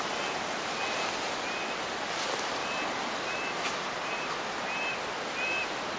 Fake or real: real